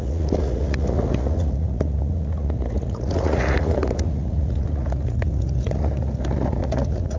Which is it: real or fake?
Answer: fake